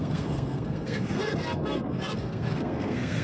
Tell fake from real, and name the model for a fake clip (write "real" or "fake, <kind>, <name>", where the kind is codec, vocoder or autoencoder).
fake, codec, SNAC